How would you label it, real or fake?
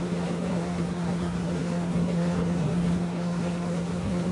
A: fake